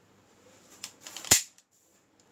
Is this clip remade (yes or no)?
yes